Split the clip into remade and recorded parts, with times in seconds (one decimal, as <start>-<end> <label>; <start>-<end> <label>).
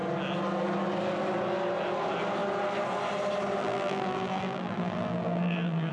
0.0-3.6 recorded; 3.6-5.9 remade